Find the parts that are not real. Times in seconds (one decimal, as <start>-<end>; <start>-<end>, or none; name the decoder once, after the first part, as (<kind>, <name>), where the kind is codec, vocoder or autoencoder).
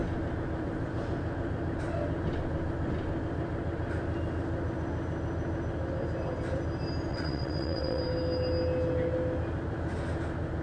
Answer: 7.1-8.0 (vocoder, WaveNeXt)